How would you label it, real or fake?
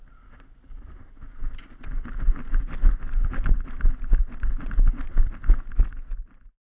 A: real